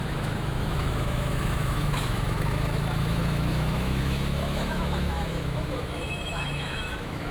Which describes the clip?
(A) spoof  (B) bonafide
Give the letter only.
A